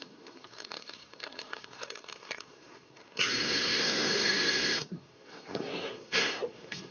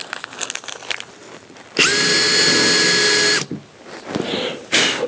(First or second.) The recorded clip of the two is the second